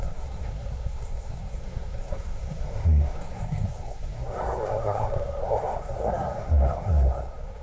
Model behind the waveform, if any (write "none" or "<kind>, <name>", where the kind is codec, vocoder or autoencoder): codec, SNAC